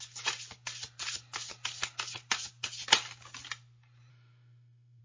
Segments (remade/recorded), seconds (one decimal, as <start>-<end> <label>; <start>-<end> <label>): 0.0-4.1 recorded; 4.1-5.0 remade